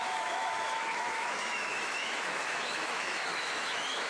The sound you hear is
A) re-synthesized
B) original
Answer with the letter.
A